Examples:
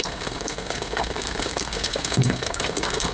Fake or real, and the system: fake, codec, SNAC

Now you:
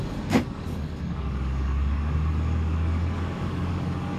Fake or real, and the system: fake, codec, DAC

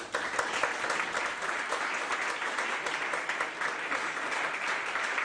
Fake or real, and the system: real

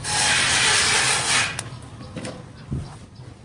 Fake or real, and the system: real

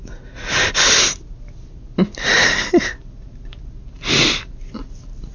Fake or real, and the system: real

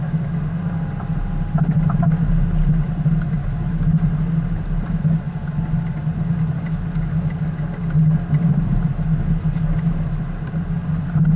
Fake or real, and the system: real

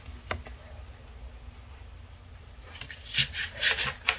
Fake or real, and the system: real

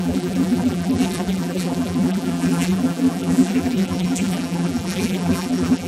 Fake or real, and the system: fake, vocoder, BigVGAN v2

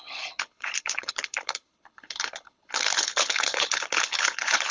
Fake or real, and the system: fake, codec, HILCodec